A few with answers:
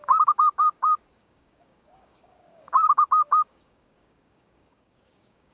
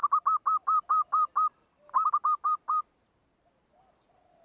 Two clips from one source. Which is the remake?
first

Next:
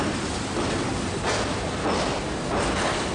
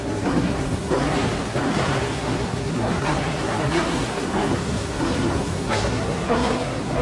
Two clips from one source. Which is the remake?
second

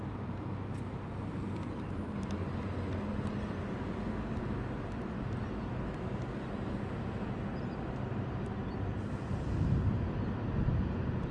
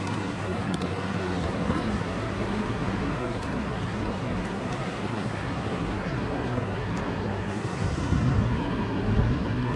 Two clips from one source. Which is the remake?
second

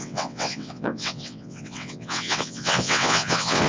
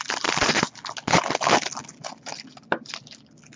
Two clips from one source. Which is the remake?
first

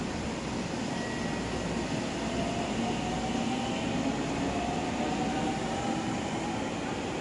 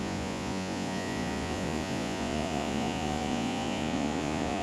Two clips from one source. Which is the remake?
second